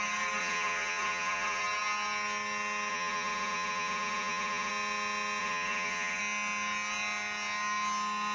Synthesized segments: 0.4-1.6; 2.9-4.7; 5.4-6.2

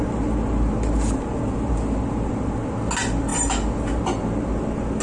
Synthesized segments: none

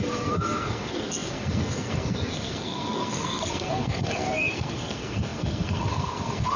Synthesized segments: 0.0-6.6